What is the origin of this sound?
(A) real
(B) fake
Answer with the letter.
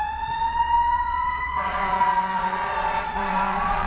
B